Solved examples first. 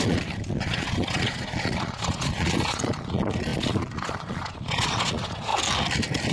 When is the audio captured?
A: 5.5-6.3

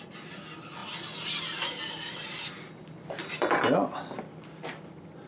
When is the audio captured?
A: 0.0-5.3